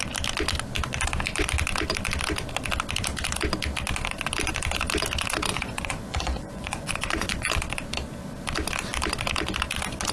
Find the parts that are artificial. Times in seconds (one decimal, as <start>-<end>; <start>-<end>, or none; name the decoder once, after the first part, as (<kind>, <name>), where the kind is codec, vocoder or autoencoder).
5.5-7.5 (vocoder, Vocos)